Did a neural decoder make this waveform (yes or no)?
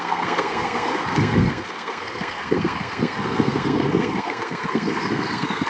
yes